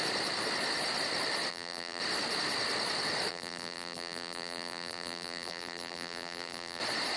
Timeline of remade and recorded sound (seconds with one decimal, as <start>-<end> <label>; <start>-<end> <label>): 0.0-1.5 recorded; 1.5-2.0 remade; 2.0-3.3 recorded; 3.3-6.8 remade; 6.8-7.2 recorded